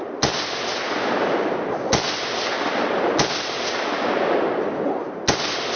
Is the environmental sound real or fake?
real